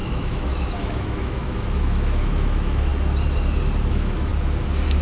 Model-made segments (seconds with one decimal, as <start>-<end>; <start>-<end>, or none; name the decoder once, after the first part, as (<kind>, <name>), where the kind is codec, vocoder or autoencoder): 0.0-2.9 (autoencoder, DAC-VAE); 3.9-4.3